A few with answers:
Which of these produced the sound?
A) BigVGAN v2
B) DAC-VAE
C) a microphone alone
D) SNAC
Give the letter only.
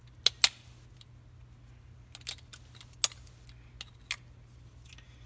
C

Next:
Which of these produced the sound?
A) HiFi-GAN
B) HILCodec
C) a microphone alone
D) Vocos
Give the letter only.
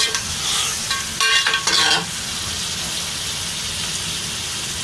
C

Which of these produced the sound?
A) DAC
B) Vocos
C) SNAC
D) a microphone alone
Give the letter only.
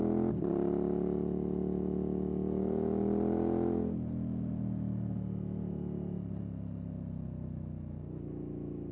D